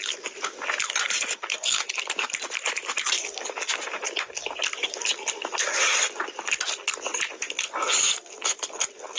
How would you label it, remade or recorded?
recorded